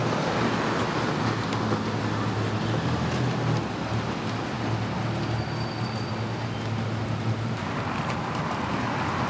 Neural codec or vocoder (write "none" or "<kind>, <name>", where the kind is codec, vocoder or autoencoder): none